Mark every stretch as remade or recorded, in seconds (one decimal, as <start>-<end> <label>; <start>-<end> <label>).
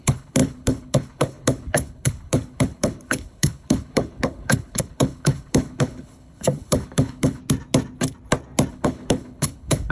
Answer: 0.0-7.4 remade; 7.4-8.7 recorded; 8.7-9.9 remade